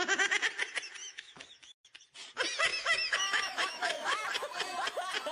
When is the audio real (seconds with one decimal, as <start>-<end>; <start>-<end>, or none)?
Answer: 0.0-1.0; 1.9-2.7; 4.2-5.3